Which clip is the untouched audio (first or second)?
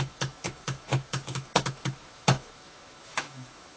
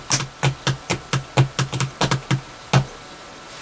second